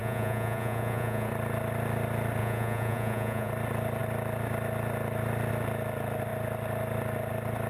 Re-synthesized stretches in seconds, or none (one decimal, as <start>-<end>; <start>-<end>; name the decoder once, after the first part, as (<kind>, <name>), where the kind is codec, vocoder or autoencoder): 0.0-1.3 (vocoder, Vocos); 2.4-3.5